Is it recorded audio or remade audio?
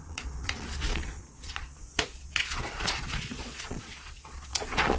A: remade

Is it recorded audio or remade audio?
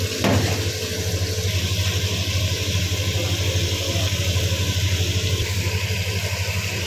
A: recorded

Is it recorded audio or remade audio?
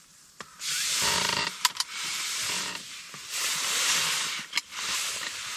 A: remade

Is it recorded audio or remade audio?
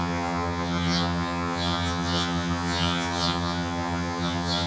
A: remade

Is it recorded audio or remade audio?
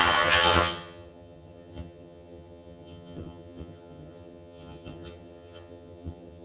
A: remade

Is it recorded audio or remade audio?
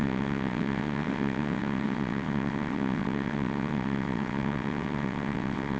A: remade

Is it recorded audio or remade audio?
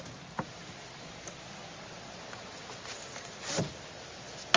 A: recorded